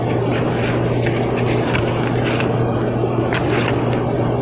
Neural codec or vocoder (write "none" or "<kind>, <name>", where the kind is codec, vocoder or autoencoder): none